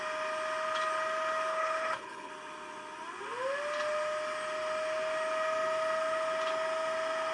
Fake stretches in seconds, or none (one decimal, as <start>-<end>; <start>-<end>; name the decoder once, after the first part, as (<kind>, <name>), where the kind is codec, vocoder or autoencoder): 1.5-2.3 (codec, HILCodec)

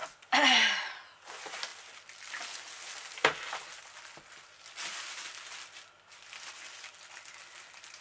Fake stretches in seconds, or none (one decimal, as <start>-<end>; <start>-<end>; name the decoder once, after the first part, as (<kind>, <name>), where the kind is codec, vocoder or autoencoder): none

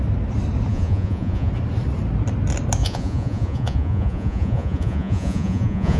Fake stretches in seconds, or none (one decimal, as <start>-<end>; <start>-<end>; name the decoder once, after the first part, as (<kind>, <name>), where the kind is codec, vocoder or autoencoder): 0.7-1.5 (vocoder, Vocos); 2.8-6.0

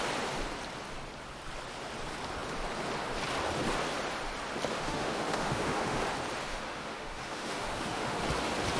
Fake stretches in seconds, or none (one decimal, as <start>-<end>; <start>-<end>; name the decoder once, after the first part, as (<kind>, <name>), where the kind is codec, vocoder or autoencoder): 4.7-6.0 (autoencoder, DAC-VAE); 6.5-8.2

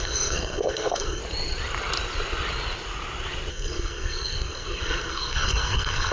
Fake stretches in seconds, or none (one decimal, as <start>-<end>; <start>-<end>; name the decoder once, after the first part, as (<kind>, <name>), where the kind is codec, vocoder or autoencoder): 0.0-1.2 (codec, SNAC); 3.5-6.1

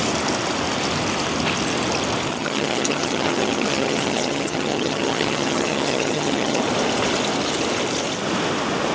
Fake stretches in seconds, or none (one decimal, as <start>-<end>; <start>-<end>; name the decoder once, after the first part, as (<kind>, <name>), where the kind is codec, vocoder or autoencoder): 2.3-6.6 (vocoder, HiFi-GAN)